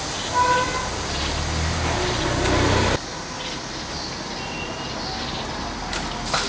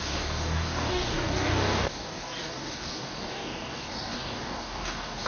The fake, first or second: second